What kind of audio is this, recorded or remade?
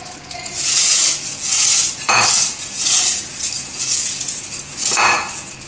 remade